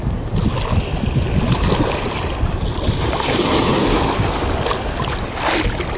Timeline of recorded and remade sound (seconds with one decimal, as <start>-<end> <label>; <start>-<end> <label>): 0.0-6.0 recorded